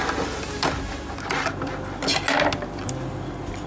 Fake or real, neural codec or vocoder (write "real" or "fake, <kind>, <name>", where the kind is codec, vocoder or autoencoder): real